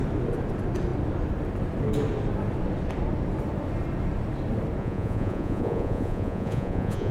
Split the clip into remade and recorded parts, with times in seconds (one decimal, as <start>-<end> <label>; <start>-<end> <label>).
0.0-4.8 recorded; 4.8-7.1 remade